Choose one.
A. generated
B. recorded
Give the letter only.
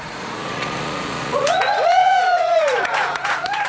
A